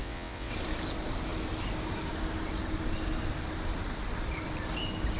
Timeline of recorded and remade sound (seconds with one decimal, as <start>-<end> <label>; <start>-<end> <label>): 0.0-0.5 remade; 0.5-5.2 recorded